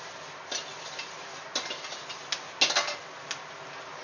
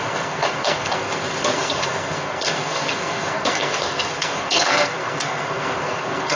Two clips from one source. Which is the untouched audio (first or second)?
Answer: first